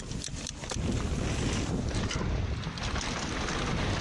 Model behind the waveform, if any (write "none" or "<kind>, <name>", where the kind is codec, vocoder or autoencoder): none